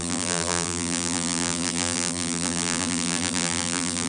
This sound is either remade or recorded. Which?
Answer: remade